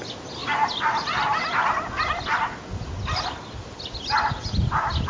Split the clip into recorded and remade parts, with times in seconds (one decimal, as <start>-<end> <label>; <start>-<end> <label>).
0.0-5.1 recorded